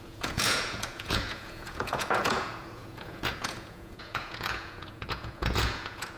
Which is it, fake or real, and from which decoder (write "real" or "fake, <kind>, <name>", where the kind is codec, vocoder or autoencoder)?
fake, vocoder, Vocos